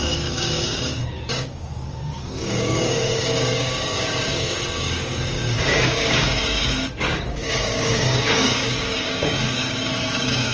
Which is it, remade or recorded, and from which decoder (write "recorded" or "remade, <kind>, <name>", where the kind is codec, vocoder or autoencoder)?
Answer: remade, codec, DAC